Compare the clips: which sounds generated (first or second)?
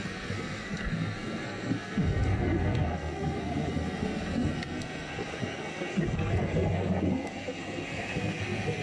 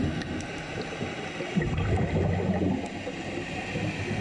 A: first